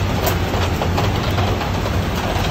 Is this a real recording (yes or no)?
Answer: yes